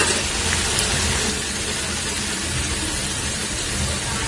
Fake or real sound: real